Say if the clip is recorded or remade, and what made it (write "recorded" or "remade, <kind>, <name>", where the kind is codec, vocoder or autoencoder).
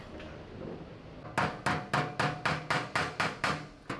recorded